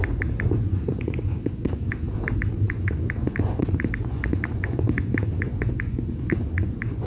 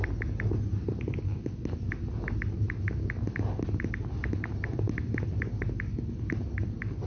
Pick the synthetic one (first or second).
first